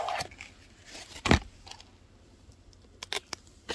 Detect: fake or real real